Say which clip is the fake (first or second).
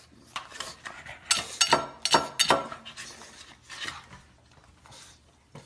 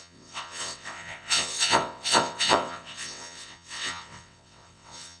second